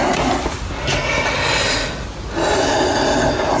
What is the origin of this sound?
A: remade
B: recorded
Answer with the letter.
B